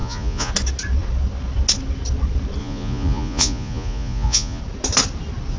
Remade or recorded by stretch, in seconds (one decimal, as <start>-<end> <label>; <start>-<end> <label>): 0.0-0.5 remade; 0.5-2.6 recorded; 2.6-4.6 remade; 4.6-5.6 recorded